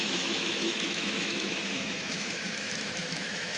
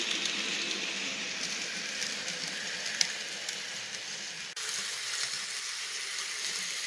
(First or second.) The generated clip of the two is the first